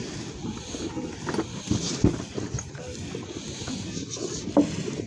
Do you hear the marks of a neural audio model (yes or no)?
no